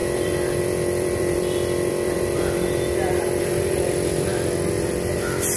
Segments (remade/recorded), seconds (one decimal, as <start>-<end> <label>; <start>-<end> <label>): 0.0-4.3 remade; 4.3-5.6 recorded